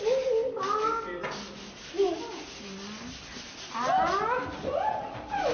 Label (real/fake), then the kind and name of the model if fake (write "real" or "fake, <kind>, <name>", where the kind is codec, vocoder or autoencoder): real